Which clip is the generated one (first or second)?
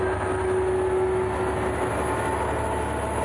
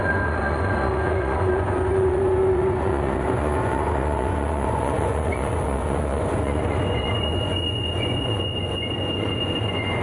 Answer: second